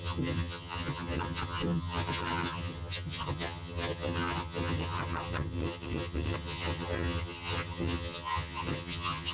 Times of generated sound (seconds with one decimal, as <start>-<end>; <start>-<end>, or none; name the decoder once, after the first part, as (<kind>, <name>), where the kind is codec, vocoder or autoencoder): 0.0-9.3 (vocoder, HiFi-GAN)